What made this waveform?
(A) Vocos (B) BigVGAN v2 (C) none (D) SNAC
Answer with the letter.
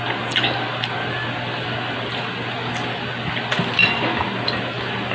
C